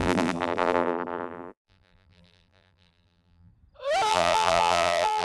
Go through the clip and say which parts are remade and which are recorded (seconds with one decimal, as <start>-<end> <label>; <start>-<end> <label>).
0.0-3.5 remade; 3.5-4.1 recorded; 4.1-5.2 remade